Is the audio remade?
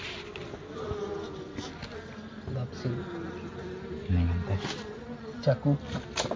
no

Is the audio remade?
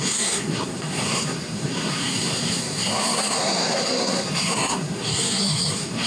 yes